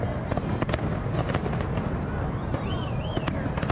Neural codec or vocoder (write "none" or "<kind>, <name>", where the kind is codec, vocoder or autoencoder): none